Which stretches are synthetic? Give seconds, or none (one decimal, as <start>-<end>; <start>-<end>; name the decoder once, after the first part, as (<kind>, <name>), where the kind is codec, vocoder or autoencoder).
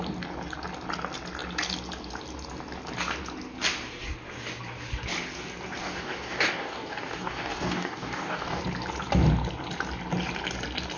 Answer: 5.8-8.6 (codec, DAC)